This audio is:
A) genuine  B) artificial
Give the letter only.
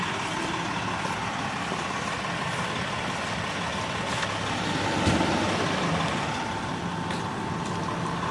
A